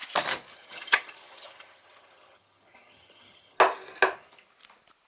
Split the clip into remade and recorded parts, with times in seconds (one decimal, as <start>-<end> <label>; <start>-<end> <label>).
0.0-0.5 recorded; 0.5-3.6 remade; 3.6-5.1 recorded